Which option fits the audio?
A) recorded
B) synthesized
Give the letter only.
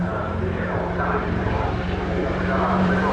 B